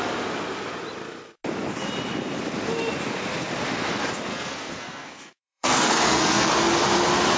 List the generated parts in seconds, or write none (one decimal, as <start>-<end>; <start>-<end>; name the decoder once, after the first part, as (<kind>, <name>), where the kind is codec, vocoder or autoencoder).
4.3-6.5 (codec, SNAC)